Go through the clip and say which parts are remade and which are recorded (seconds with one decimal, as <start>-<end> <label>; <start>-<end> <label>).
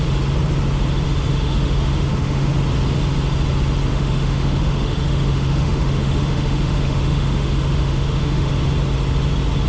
0.0-1.3 recorded; 1.3-2.5 remade; 2.5-3.9 recorded; 3.9-8.5 remade; 8.5-9.7 recorded